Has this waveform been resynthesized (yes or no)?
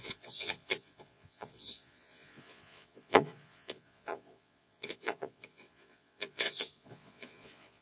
yes